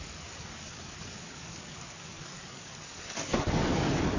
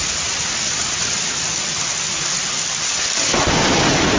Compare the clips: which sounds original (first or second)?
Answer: second